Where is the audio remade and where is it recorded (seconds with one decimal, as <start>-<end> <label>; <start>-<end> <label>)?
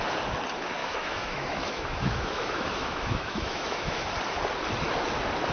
0.0-0.8 recorded; 0.8-4.1 remade; 4.1-5.5 recorded